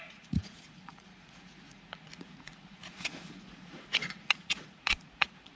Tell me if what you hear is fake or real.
fake